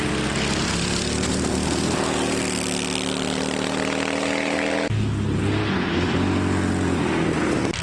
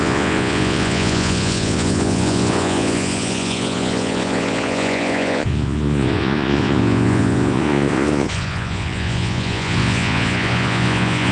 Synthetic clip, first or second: second